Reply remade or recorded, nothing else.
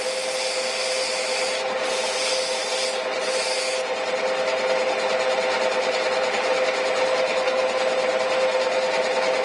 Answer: recorded